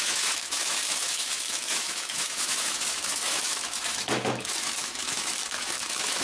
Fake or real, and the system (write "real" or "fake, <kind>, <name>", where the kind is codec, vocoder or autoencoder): fake, autoencoder, DAC-VAE